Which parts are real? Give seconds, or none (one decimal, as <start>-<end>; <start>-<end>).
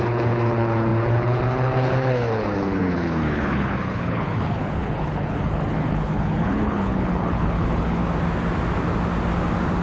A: 8.0-9.8